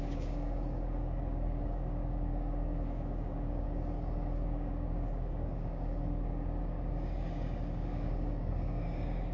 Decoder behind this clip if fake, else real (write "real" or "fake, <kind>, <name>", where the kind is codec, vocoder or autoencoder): fake, codec, DAC